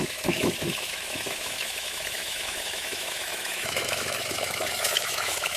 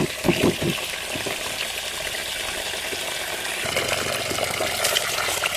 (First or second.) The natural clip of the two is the second